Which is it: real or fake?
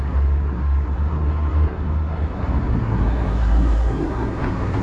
fake